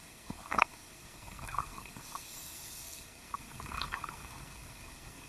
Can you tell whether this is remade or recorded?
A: remade